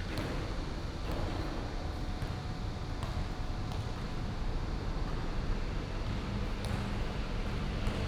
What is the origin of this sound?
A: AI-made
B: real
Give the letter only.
B